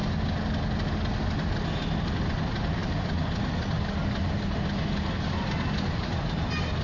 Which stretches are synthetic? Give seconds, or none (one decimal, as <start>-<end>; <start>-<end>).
none